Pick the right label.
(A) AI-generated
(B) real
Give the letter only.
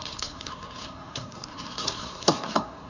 A